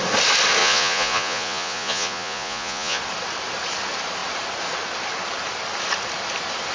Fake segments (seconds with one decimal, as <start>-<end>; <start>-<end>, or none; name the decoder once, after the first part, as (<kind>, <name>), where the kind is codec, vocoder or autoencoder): 0.6-3.0 (vocoder, Vocos)